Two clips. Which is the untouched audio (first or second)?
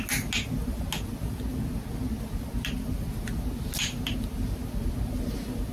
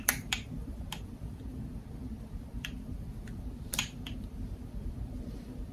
first